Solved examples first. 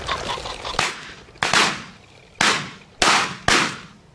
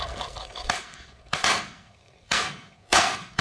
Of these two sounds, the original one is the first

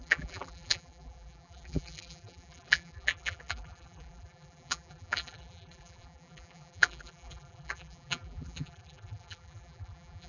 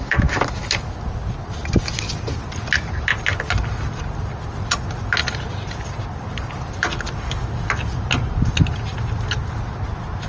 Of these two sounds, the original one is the second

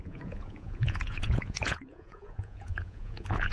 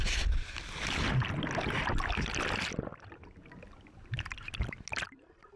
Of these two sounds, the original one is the second